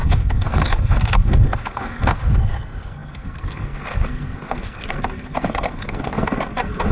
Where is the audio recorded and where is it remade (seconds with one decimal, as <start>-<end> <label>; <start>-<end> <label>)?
0.0-6.9 remade